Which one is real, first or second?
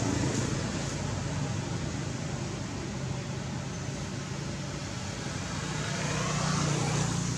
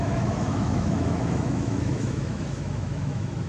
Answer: first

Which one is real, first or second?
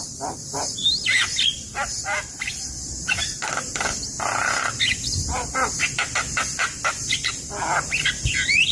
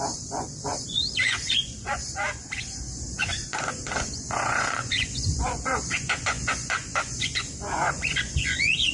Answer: first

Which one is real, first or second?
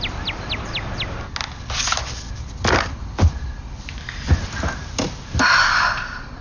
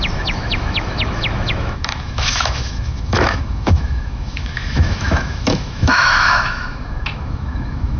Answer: first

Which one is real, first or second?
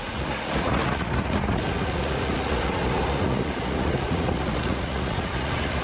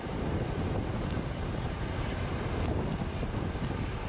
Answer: second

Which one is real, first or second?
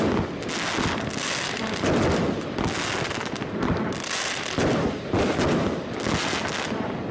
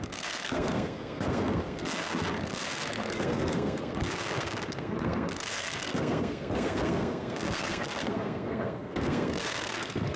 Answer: first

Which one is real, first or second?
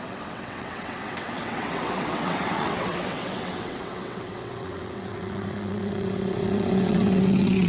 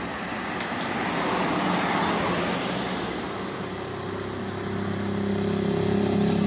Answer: second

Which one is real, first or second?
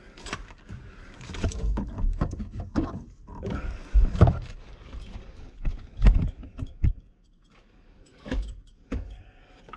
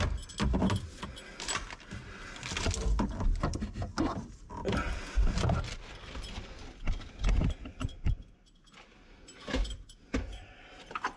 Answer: second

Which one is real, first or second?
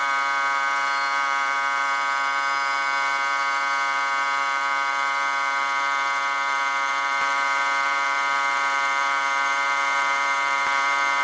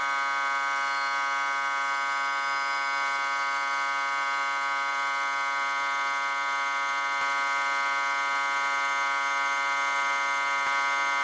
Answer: second